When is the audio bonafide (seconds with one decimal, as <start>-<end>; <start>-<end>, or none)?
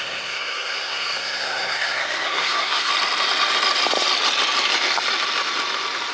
2.9-6.1